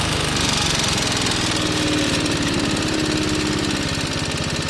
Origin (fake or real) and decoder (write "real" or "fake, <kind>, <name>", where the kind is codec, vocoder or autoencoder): real